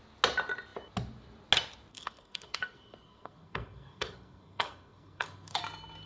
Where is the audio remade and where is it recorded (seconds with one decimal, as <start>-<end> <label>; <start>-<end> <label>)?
0.0-1.9 recorded; 1.9-5.6 remade; 5.6-6.1 recorded